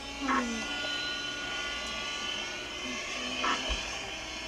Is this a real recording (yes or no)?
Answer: yes